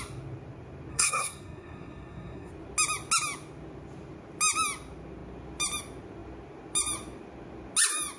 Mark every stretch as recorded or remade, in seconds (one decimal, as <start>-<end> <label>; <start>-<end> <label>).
0.0-0.9 recorded; 0.9-2.5 remade; 2.5-8.2 recorded